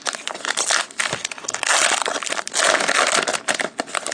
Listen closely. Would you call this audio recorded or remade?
recorded